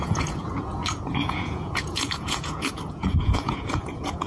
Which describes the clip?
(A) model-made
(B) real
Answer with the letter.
A